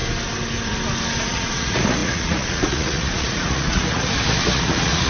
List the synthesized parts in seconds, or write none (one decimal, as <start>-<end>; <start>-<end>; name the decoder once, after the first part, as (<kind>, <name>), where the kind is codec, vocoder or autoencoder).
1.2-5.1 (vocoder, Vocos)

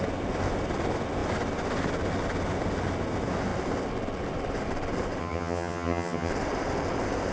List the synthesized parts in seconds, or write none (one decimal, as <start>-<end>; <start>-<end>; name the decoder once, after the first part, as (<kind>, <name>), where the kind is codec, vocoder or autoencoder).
5.2-6.3 (vocoder, HiFi-GAN)

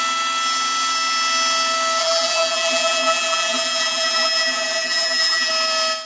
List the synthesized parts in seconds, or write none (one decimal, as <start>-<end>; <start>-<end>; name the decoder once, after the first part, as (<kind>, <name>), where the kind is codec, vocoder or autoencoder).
2.0-5.5 (vocoder, BigVGAN v2)

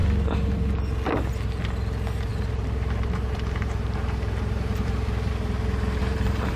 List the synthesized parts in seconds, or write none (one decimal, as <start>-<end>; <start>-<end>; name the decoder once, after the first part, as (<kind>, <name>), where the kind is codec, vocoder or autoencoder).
2.3-5.3 (vocoder, BigVGAN v2); 6.0-6.6

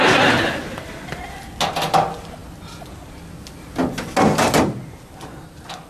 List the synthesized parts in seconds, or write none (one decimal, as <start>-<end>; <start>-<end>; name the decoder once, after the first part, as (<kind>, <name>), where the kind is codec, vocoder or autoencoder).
none

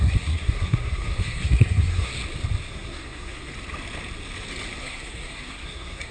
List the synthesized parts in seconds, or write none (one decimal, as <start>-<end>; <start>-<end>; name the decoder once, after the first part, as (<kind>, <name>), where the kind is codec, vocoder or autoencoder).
0.0-2.1 (codec, SNAC); 2.7-3.5; 4.8-6.1

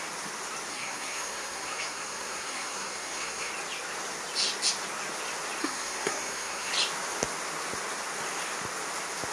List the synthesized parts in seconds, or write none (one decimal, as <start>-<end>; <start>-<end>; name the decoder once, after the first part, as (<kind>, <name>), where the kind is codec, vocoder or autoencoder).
0.7-3.5 (codec, SNAC); 5.6-6.7

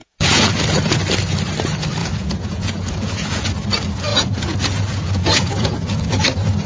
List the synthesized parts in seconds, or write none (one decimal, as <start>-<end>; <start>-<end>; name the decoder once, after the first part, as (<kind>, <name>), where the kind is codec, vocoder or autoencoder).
0.0-0.5 (vocoder, Vocos); 2.0-3.5; 4.1-5.9